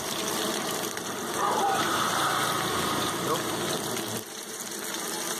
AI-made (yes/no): yes